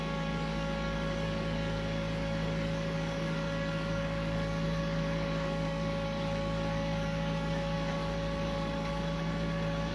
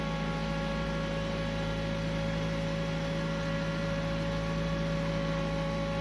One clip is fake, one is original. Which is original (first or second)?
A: second